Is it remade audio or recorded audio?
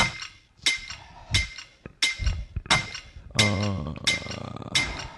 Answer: recorded